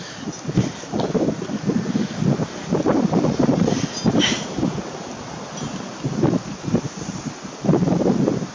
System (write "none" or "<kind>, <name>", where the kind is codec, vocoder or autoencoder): none